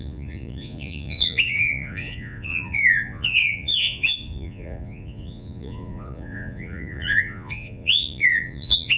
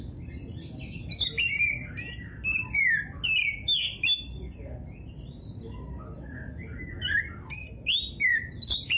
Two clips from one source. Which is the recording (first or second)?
second